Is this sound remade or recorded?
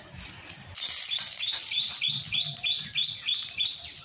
recorded